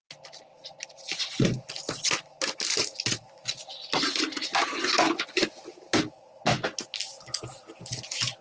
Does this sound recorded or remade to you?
recorded